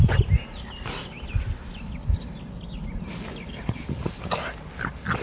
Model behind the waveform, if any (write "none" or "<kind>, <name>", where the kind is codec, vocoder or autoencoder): none